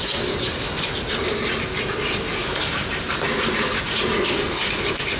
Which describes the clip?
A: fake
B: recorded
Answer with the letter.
B